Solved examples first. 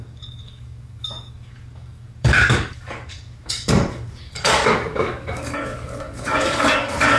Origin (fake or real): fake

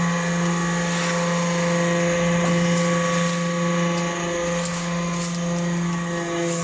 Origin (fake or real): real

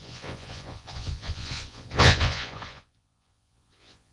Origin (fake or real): fake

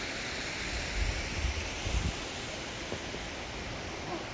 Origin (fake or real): real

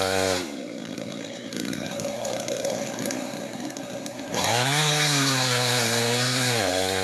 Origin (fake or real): fake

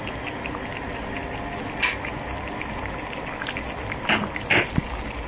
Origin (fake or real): real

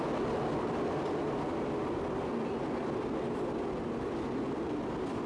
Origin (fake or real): real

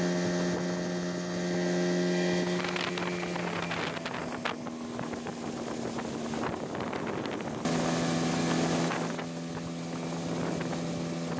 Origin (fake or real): real